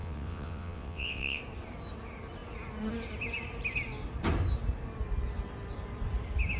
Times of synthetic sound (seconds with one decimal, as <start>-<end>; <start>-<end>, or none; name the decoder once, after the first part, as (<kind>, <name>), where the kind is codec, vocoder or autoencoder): 0.0-1.4 (vocoder, WaveNeXt)